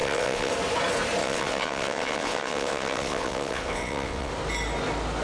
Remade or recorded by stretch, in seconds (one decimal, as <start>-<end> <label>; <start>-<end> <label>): 0.0-0.5 remade; 0.5-1.2 recorded; 1.2-4.3 remade; 4.3-5.2 recorded